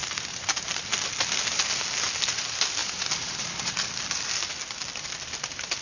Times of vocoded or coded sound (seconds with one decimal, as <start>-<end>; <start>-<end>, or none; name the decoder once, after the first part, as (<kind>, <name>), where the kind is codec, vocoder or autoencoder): 0.0-0.8 (vocoder, BigVGAN v2); 2.8-3.9